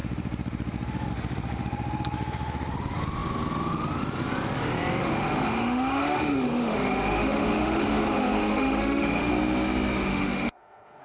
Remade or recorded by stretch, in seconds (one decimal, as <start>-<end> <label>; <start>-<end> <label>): 0.0-5.0 recorded; 5.0-9.3 remade; 9.3-10.1 recorded; 10.1-11.0 remade